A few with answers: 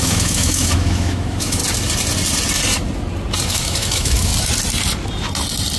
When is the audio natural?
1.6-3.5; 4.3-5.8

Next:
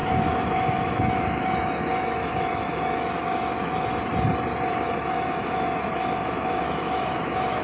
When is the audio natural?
3.9-4.7

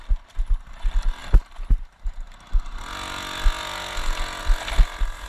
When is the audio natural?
0.0-5.3

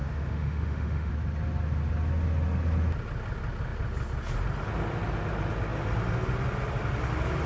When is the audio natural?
1.1-7.5

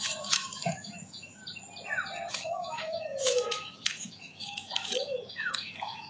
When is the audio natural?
1.4-2.3

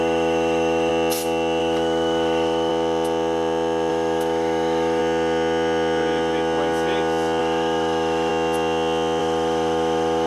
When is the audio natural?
0.9-1.6; 2.7-3.9; 5.0-7.4; 8.3-9.2

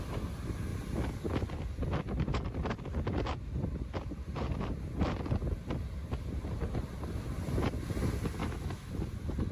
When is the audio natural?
0.0-8.4; 8.9-9.5

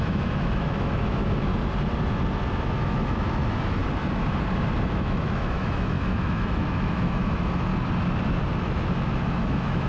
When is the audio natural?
1.5-2.6; 3.8-4.9; 7.7-8.6